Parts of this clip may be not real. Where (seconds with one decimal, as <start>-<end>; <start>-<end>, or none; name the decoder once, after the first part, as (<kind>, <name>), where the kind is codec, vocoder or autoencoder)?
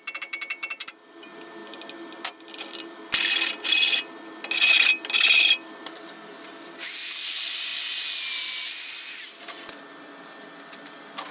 none